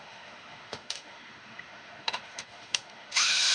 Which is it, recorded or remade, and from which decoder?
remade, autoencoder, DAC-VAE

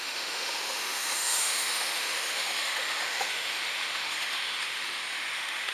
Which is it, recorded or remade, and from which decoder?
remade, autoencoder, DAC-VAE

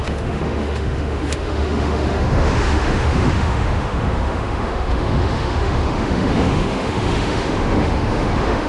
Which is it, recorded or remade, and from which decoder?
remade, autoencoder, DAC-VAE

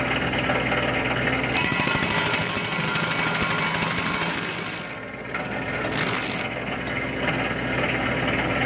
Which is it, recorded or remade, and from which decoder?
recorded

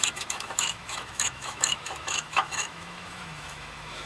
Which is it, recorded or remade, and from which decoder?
remade, autoencoder, DAC-VAE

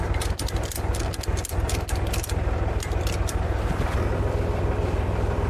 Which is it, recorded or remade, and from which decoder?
recorded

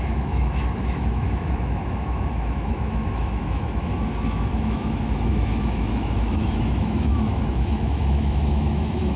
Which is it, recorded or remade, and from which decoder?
remade, autoencoder, DAC-VAE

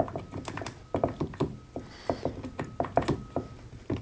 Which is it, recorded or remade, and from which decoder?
recorded